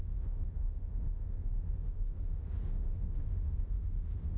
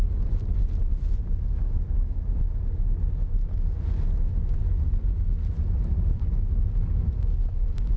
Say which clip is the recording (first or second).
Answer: second